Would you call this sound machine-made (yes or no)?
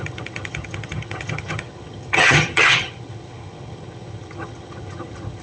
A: yes